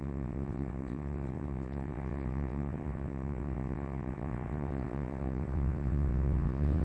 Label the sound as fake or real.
fake